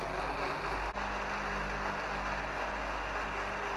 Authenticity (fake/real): real